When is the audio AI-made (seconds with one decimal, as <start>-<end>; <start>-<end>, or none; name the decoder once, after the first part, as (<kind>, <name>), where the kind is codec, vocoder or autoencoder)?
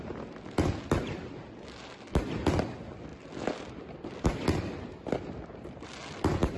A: none